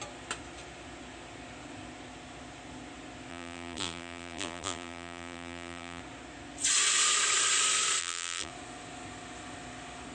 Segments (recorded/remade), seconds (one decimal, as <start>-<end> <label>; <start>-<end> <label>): 0.0-3.3 recorded; 3.3-6.0 remade; 6.0-8.0 recorded; 8.0-8.5 remade; 8.5-10.1 recorded